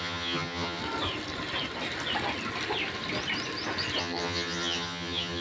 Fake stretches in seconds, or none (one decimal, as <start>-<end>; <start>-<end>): 0.0-0.8; 4.0-5.4